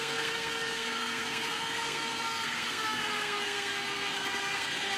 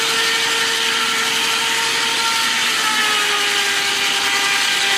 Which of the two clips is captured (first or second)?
second